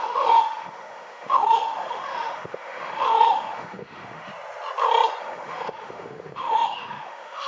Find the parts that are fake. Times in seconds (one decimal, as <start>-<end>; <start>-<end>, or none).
0.0-4.3; 5.2-7.5